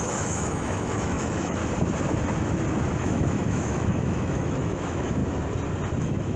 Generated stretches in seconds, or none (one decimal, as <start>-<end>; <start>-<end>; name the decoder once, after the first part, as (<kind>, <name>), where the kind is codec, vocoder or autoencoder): 0.0-1.6 (autoencoder, DAC-VAE); 3.0-5.2; 6.0-6.4